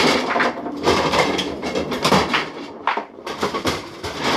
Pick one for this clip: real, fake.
fake